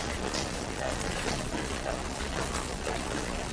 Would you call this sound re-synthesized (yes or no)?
yes